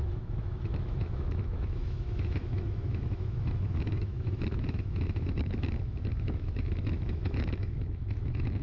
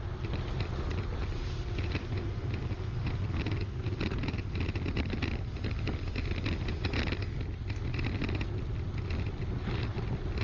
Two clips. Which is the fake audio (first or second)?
first